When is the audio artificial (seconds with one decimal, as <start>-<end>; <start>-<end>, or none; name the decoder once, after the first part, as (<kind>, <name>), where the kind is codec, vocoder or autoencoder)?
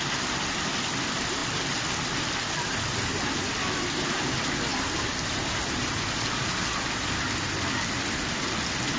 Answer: none